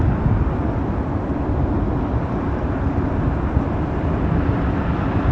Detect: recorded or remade remade